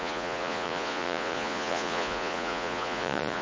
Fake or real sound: fake